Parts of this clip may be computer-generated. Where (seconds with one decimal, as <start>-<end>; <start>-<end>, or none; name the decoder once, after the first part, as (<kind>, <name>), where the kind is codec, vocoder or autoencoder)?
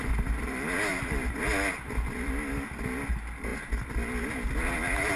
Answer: none